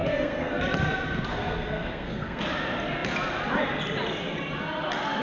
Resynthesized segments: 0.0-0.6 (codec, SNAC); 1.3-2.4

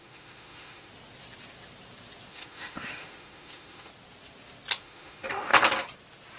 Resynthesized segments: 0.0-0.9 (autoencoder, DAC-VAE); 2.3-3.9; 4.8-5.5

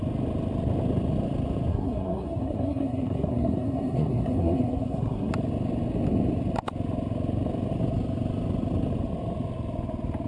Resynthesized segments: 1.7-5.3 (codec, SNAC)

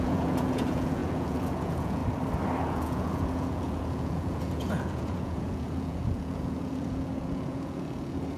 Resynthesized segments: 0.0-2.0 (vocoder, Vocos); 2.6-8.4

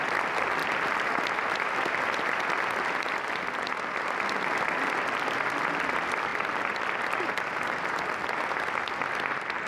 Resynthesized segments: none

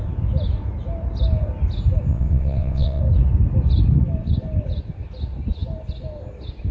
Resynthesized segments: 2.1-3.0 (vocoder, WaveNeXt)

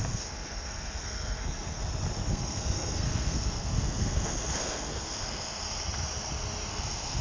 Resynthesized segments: 0.0-1.8 (codec, SNAC); 2.3-5.6; 6.7-7.2